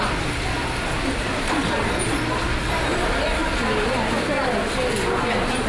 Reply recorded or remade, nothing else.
recorded